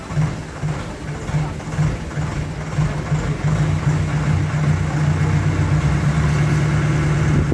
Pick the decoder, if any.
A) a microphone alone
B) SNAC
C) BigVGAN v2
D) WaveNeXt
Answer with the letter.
A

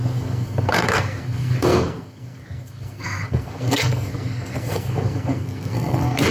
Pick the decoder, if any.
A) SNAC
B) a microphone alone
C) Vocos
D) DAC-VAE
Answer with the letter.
A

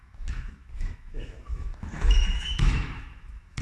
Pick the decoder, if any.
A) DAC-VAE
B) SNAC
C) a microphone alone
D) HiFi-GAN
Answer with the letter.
A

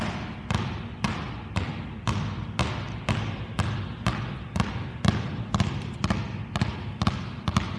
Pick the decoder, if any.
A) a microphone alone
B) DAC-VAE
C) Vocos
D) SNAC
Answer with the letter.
A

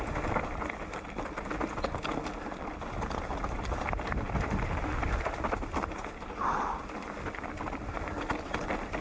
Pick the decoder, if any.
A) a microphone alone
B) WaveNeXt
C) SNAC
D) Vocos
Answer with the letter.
A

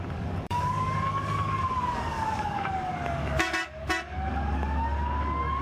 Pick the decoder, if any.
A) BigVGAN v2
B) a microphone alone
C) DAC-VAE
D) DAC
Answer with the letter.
D